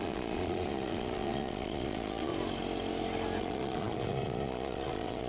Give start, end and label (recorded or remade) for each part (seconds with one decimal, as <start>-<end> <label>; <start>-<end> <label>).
0.0-2.3 remade; 2.3-3.4 recorded; 3.4-5.3 remade